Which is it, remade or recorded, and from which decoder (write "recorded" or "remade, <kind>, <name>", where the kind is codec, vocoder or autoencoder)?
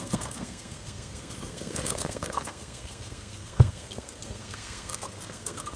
remade, codec, SNAC